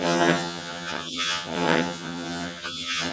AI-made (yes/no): yes